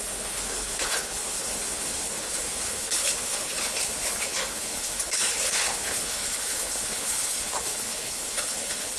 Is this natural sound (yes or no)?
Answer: no